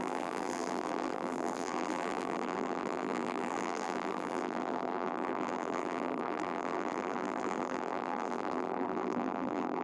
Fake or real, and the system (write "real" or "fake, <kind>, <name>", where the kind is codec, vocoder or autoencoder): fake, vocoder, BigVGAN v2